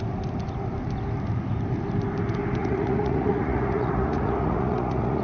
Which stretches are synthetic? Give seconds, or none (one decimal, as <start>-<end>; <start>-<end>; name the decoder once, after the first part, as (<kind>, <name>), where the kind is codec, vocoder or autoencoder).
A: 2.6-5.2 (vocoder, Vocos)